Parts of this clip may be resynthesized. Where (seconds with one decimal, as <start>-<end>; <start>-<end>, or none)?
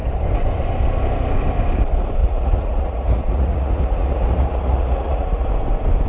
2.2-5.5